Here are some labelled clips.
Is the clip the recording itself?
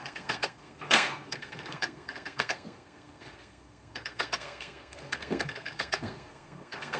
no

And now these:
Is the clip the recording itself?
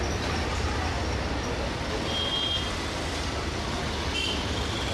yes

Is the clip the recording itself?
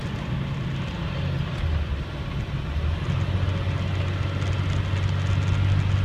yes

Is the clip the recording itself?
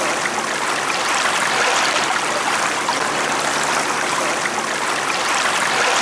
yes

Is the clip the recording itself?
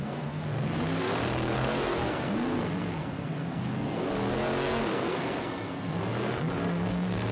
no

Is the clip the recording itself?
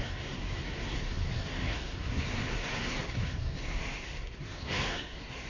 no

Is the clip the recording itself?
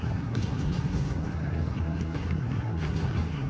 no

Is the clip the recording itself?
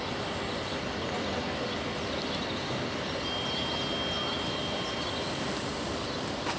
yes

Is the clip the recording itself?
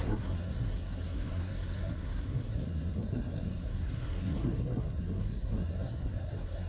no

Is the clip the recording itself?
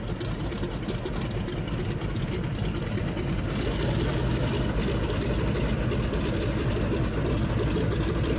yes